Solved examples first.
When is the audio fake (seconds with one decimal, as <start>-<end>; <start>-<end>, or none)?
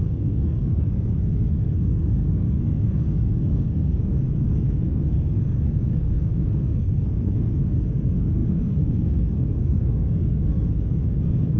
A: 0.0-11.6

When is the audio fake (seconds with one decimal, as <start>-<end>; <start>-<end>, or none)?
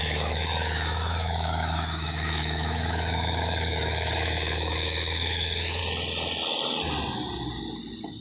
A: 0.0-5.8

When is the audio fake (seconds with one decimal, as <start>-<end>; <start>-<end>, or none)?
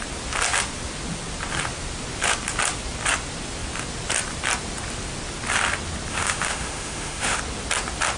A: 6.1-7.4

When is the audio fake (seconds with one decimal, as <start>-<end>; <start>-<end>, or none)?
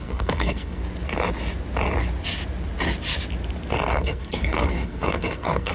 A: 0.0-0.8; 3.9-5.7